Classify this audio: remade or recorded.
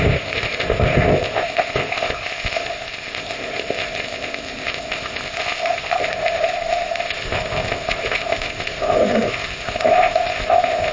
remade